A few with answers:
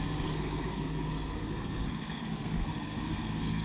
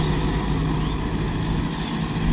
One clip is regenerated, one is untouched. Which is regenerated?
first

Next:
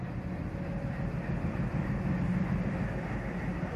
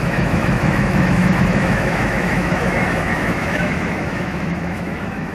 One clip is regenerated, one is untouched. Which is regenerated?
second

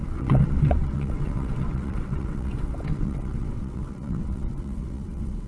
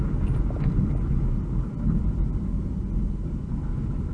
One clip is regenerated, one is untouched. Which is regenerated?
first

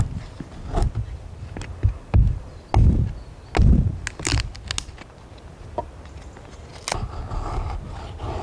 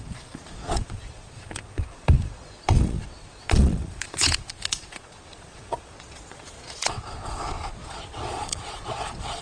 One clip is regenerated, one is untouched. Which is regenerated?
second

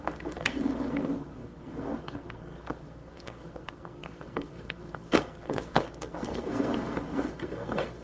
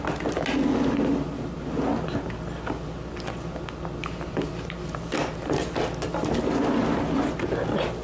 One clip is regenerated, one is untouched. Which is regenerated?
first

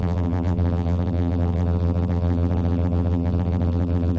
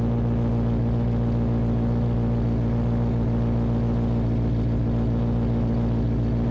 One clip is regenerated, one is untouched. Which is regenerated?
first